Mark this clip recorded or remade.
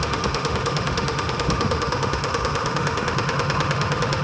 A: remade